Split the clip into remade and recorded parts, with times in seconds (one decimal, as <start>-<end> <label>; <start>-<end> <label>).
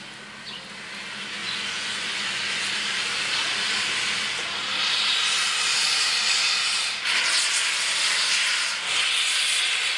0.0-1.4 recorded; 1.4-2.6 remade; 2.6-10.0 recorded